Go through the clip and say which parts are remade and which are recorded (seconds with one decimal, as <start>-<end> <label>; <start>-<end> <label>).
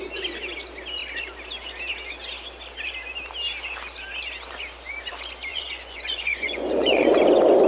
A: 0.0-5.5 recorded; 5.5-7.2 remade; 7.2-7.7 recorded